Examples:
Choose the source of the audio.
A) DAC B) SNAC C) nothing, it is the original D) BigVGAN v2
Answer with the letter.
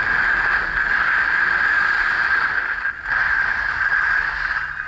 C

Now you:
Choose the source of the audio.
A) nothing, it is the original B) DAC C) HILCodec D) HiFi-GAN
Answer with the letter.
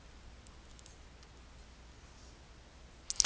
A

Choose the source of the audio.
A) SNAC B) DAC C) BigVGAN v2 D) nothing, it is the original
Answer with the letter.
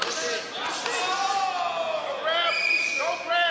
D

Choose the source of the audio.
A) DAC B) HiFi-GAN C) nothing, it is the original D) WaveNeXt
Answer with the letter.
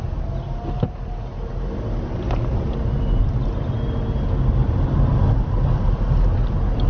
C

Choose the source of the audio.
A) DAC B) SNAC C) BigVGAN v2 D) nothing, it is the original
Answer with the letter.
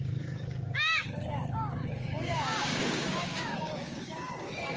A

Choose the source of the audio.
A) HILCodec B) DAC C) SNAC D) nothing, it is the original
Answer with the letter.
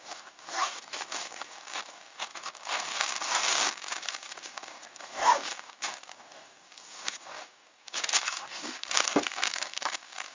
B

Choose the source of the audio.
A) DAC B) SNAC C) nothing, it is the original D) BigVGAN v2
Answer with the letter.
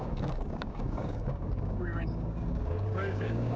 A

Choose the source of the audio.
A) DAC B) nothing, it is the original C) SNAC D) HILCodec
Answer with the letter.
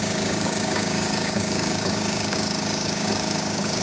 A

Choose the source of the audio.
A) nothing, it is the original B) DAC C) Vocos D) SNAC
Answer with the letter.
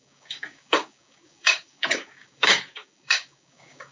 B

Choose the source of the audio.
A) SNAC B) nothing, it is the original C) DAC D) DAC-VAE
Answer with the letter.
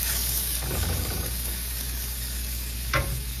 C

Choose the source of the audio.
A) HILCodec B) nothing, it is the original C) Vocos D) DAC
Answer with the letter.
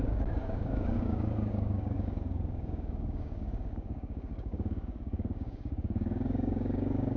D